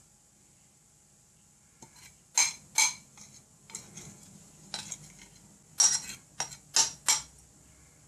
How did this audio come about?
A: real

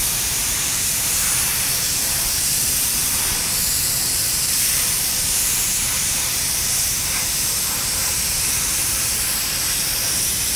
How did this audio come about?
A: fake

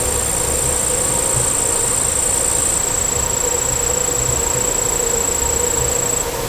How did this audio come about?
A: real